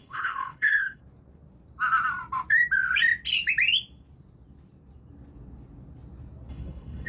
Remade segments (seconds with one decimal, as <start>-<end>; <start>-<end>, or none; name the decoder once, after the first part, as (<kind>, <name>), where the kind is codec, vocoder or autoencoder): 0.0-1.0 (codec, HILCodec); 6.5-7.1